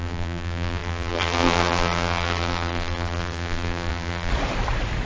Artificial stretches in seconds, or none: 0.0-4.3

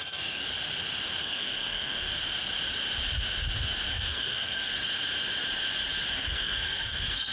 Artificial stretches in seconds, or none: 0.0-0.4; 1.2-2.1; 3.9-4.7; 6.1-7.3

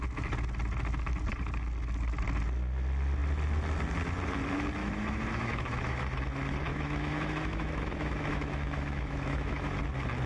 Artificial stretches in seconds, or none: 4.8-6.2; 6.7-9.8

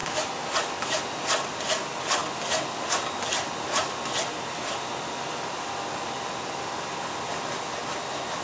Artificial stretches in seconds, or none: none

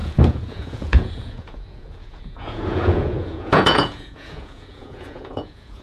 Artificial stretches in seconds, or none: 0.0-5.8